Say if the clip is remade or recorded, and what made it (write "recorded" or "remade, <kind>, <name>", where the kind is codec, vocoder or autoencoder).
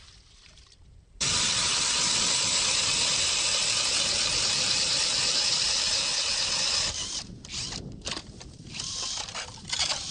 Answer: remade, vocoder, BigVGAN v2